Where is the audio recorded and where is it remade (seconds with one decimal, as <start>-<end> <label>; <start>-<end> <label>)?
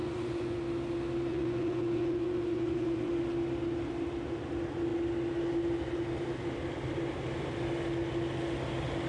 0.0-0.6 remade; 0.6-1.3 recorded; 1.3-3.1 remade; 3.1-9.1 recorded